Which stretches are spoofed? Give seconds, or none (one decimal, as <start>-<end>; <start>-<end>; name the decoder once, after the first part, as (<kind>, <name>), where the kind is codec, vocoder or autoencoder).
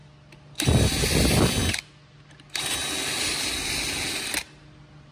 none